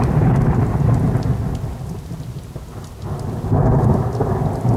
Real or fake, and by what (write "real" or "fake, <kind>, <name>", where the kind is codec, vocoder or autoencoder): real